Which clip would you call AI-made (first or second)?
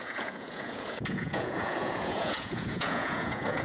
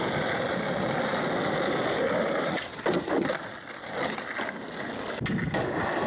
first